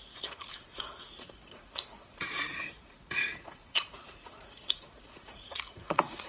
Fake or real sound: fake